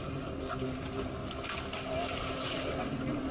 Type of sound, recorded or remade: recorded